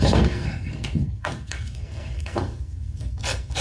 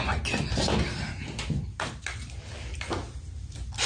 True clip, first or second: second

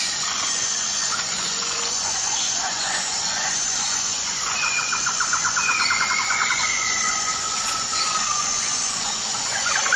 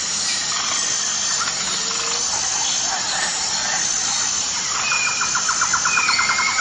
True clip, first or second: second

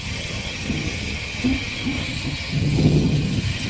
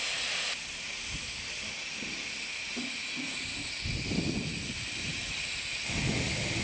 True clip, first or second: second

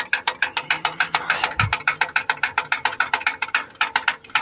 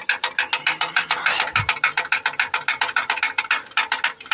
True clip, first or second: second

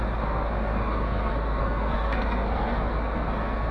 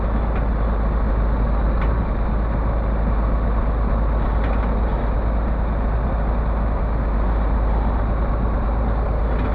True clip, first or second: second